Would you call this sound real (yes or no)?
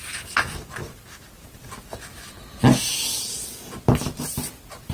yes